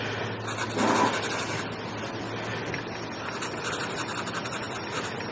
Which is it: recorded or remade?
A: recorded